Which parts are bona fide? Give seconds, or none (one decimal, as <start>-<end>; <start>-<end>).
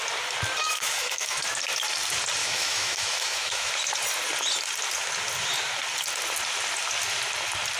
0.0-0.6; 1.4-2.4; 3.7-7.8